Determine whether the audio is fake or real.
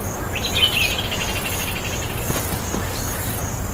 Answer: real